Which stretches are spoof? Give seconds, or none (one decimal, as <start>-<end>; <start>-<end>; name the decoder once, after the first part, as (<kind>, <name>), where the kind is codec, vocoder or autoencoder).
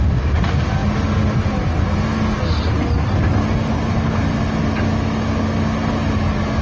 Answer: none